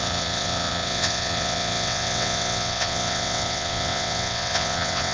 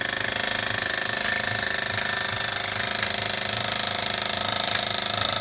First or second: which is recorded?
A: second